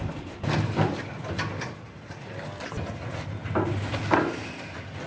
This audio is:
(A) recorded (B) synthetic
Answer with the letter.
A